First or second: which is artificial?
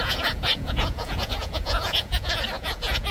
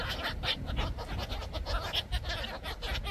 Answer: first